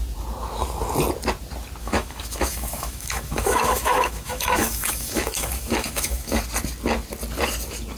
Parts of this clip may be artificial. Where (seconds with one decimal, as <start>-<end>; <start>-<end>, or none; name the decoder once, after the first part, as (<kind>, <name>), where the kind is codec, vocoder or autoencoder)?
1.8-6.4 (autoencoder, DAC-VAE)